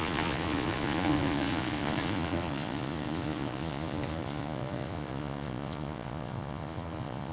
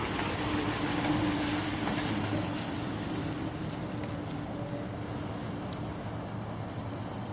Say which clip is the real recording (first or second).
second